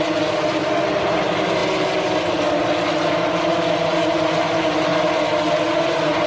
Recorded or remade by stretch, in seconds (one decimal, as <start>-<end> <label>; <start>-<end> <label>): 0.0-4.9 remade; 4.9-5.5 recorded; 5.5-6.3 remade